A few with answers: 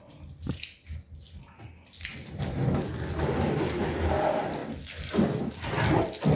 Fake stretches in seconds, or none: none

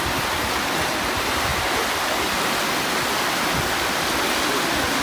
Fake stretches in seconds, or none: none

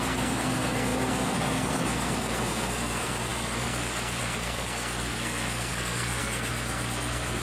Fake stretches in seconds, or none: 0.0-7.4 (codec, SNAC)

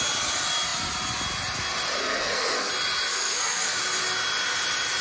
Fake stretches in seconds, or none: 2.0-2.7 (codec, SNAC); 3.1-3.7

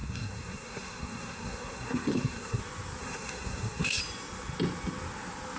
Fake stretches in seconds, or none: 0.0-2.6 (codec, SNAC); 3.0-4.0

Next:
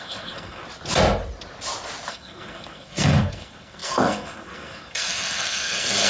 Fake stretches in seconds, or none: 0.0-0.6 (codec, SNAC); 2.1-6.1